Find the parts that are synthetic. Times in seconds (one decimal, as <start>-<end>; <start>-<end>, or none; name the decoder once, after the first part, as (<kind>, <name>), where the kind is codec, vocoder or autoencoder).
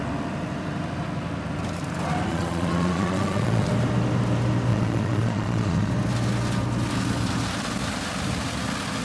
2.3-3.7 (vocoder, Vocos); 4.7-5.9